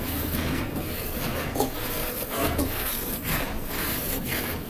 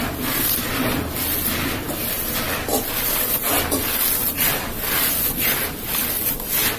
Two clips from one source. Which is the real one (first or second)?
second